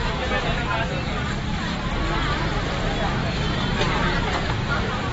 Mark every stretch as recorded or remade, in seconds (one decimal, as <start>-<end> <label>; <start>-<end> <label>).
0.0-1.1 recorded; 1.1-2.8 remade; 2.8-3.2 recorded; 3.2-4.5 remade; 4.5-5.1 recorded

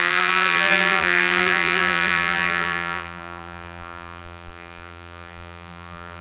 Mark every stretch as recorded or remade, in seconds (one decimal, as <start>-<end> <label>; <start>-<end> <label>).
0.0-6.2 remade